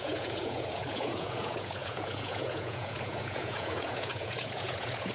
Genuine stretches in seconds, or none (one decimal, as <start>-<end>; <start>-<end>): none